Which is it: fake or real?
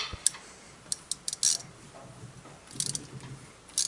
real